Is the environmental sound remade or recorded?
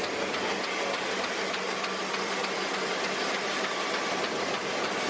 recorded